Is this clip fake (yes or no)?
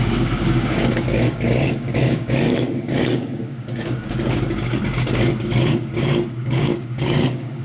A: yes